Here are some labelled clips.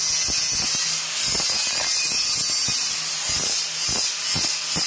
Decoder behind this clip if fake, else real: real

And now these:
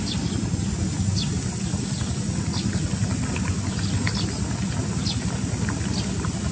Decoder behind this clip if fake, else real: real